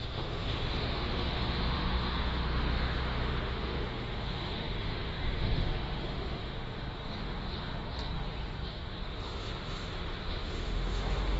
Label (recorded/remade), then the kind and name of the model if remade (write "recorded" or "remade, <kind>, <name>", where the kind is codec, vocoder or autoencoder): remade, autoencoder, DAC-VAE